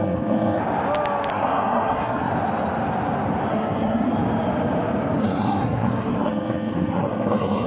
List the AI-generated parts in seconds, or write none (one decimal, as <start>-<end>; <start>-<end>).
0.0-0.6; 1.3-2.3; 3.5-4.1; 5.2-7.7